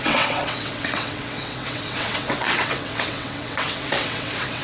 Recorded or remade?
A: remade